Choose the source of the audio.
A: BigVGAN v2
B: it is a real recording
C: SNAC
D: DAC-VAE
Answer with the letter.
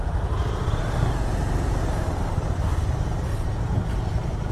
A